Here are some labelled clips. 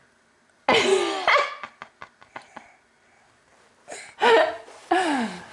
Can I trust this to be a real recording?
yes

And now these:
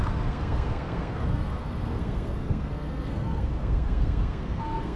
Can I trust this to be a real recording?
no